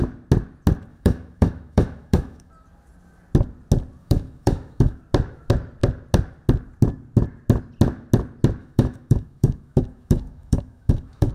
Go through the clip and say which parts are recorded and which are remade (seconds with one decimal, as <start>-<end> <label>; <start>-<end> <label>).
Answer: 0.0-0.9 recorded; 0.9-2.5 remade; 2.5-4.0 recorded; 4.0-5.0 remade; 5.0-8.6 recorded; 8.6-11.3 remade